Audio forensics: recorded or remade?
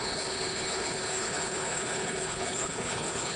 remade